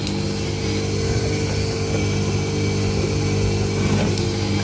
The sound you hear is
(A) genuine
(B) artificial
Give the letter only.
A